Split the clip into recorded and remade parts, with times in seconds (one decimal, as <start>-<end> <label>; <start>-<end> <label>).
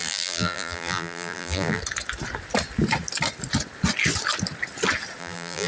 0.0-1.8 remade; 1.8-5.2 recorded; 5.2-5.7 remade